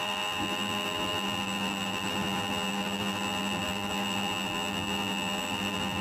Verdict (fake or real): fake